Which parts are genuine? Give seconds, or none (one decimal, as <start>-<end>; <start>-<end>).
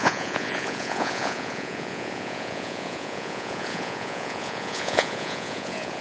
none